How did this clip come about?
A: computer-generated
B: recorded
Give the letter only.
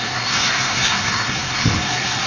A